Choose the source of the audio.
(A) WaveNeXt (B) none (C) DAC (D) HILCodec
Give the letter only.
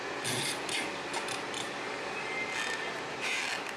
B